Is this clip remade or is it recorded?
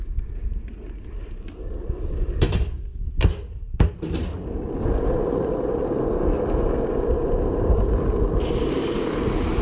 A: recorded